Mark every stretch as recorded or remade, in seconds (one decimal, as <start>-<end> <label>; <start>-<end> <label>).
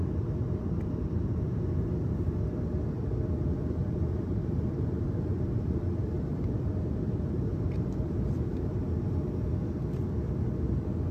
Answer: 0.0-3.8 recorded; 3.8-8.8 remade; 8.8-11.1 recorded